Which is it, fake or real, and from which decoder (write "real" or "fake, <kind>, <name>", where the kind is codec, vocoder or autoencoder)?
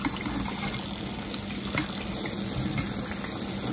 real